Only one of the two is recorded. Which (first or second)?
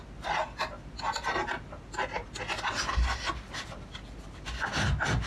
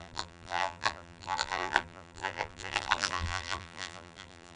first